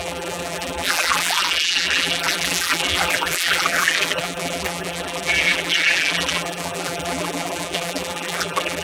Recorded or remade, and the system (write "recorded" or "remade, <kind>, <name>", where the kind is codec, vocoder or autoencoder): remade, vocoder, BigVGAN v2